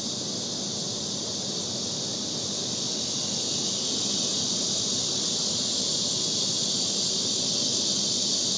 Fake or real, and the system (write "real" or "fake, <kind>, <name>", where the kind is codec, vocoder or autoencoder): real